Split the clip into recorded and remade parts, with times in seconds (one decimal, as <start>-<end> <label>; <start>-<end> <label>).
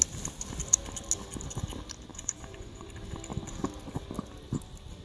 0.0-2.1 recorded; 2.1-2.9 remade; 2.9-5.0 recorded